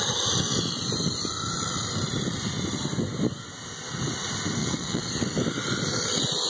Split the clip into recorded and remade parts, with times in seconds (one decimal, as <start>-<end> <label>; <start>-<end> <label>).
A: 0.0-4.6 recorded; 4.6-5.1 remade; 5.1-6.5 recorded